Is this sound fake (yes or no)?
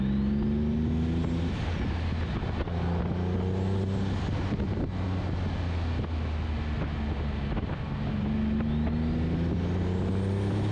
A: no